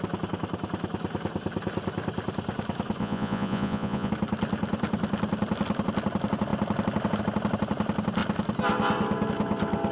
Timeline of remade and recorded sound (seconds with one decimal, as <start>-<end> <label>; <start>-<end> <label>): 0.0-3.0 recorded; 3.0-4.1 remade; 4.1-9.9 recorded